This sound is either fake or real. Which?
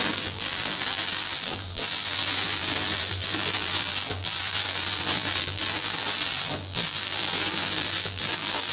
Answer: fake